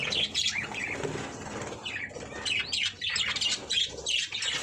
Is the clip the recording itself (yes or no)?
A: yes